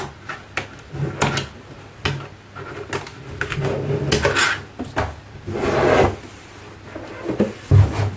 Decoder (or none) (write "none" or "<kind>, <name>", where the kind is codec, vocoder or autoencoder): none